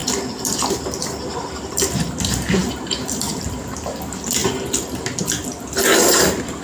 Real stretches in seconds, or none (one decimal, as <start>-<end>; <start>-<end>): 1.2-2.6; 3.4-6.6